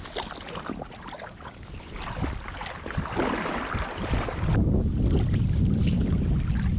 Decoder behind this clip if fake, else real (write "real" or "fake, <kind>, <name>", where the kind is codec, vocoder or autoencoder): real